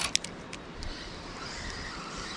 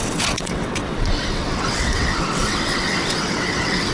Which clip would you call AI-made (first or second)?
second